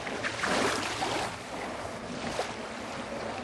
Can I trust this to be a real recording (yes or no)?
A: yes